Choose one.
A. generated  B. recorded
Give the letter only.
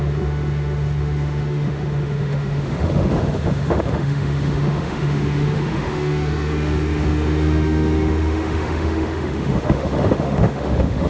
A